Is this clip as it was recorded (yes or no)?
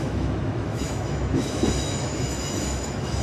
no